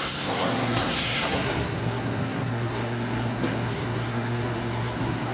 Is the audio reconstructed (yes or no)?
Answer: yes